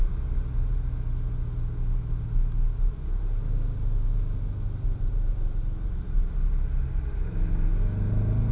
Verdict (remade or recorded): recorded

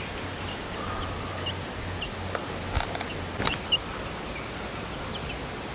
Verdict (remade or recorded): recorded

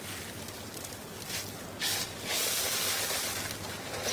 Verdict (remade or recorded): recorded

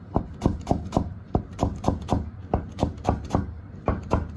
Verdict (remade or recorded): remade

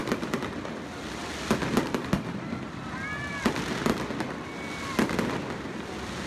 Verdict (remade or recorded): recorded